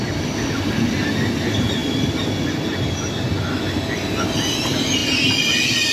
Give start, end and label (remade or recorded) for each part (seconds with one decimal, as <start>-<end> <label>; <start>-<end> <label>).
0.0-5.9 recorded